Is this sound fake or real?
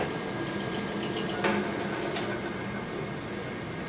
real